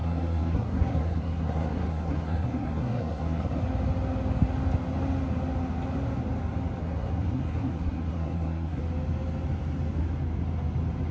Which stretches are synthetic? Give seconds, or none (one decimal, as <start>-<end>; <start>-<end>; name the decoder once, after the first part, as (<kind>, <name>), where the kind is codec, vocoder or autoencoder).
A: 0.0-3.6 (codec, SNAC); 6.8-8.8